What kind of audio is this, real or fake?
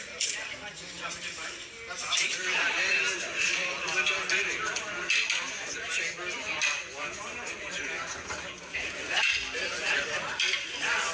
real